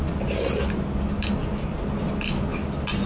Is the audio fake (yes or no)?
no